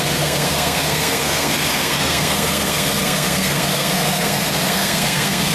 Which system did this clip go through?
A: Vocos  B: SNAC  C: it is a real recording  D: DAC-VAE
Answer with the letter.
B